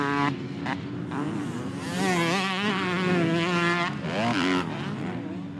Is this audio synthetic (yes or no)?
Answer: no